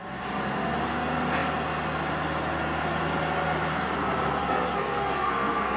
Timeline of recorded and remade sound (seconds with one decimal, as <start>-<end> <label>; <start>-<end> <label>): 0.0-4.4 recorded; 4.4-5.8 remade